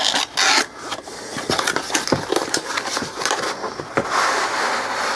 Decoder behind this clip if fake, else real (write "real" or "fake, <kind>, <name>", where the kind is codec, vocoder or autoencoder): real